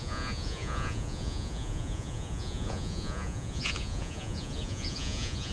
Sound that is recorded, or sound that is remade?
remade